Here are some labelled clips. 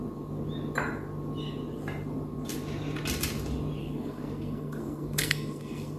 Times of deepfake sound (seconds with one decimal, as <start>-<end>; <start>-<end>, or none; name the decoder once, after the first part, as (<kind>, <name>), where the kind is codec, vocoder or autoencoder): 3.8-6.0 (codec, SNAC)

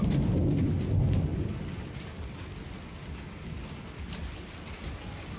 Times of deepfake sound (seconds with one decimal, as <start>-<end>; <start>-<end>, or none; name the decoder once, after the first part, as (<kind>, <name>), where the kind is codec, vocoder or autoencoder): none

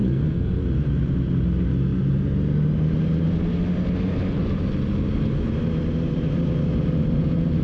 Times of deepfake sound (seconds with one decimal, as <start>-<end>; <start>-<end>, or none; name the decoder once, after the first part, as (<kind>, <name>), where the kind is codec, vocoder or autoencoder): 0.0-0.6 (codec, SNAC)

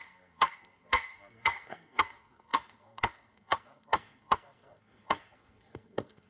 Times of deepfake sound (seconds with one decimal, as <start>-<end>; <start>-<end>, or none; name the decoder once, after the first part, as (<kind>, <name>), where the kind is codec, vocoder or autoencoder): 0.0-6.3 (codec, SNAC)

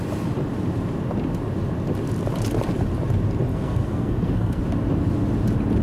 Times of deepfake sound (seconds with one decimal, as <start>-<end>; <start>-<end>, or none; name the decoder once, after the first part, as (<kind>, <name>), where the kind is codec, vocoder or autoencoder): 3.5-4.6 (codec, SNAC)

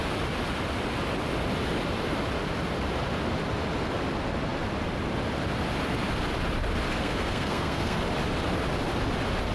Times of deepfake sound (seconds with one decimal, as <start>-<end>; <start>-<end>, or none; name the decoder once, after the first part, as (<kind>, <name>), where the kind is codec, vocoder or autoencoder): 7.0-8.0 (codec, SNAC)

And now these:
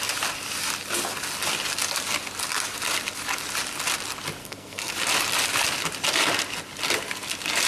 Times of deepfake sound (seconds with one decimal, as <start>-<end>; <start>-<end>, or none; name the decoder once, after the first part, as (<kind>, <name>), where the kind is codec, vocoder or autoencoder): 4.4-4.9 (codec, SNAC)